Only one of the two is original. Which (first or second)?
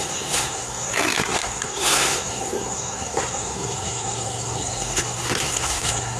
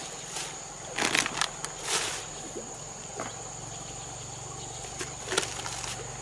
second